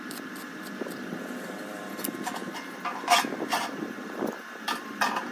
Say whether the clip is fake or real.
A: fake